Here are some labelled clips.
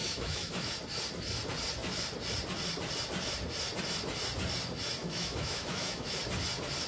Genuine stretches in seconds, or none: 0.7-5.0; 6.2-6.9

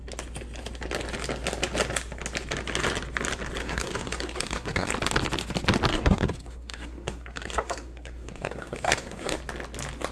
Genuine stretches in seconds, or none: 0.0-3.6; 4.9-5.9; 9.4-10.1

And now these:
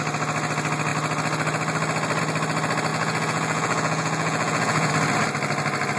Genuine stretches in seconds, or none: 0.0-2.9; 4.9-6.0